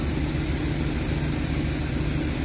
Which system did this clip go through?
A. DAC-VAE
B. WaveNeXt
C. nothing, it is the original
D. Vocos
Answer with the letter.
C